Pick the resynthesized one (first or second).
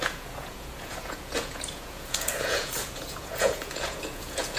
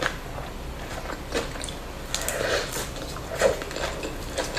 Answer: first